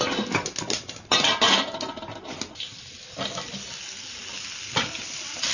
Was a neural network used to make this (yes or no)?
no